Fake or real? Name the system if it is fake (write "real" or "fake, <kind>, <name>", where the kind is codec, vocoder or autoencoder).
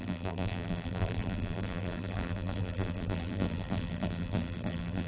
fake, vocoder, BigVGAN v2